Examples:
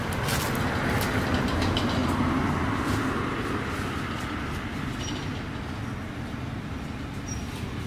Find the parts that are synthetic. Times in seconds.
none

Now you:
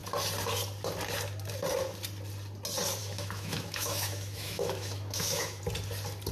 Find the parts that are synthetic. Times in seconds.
3.0-5.6 (autoencoder, DAC-VAE)

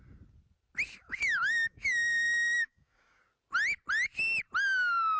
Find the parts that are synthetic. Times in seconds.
1.0-3.2 (autoencoder, DAC-VAE)